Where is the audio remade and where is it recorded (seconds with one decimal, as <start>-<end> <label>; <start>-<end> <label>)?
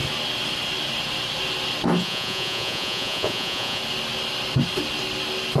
0.0-2.0 recorded; 2.0-3.8 remade; 3.8-5.6 recorded